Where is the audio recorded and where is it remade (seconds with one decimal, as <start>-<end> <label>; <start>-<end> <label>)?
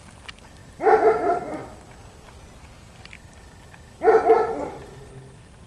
0.0-5.7 recorded